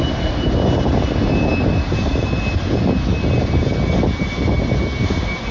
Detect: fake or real real